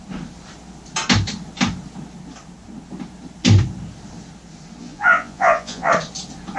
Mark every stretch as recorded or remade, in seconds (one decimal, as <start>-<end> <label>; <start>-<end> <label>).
0.0-4.8 recorded; 4.8-5.9 remade; 5.9-6.6 recorded